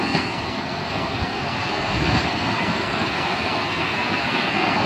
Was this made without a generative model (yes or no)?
no